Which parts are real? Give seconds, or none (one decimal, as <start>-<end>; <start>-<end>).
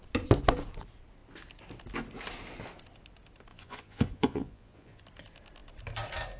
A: 0.0-3.5; 5.0-6.4